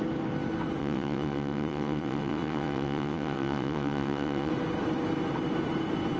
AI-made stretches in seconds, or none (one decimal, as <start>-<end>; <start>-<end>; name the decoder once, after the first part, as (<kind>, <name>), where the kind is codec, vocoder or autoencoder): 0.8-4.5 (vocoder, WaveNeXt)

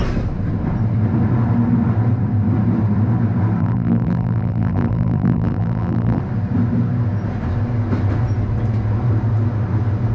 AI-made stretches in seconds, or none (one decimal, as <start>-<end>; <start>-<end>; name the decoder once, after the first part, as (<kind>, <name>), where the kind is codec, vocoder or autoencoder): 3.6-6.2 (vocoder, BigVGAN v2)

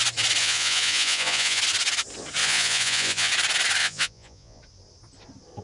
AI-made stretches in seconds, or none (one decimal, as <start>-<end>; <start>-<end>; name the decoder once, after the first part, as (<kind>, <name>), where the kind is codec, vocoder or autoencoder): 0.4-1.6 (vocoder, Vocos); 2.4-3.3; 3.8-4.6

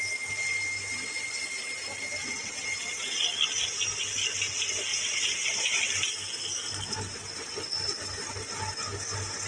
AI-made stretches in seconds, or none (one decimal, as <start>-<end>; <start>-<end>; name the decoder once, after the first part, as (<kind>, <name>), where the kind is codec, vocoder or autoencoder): 2.2-2.7 (vocoder, WaveNeXt); 4.9-5.8

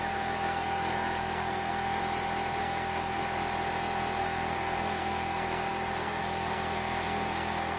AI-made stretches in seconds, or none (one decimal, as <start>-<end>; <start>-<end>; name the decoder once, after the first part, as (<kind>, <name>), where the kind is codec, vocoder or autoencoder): 0.0-2.0 (codec, SNAC); 2.6-3.2; 4.2-7.8

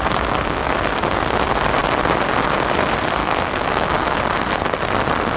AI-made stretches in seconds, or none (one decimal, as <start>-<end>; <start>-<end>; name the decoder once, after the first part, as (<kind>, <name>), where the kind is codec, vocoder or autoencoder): 3.2-4.2 (autoencoder, DAC-VAE)